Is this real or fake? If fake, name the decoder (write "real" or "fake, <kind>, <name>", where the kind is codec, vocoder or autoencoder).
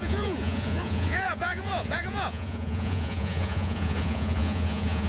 fake, vocoder, Vocos